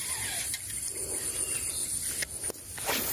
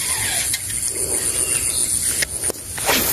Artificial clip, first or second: first